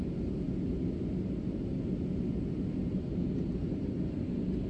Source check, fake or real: real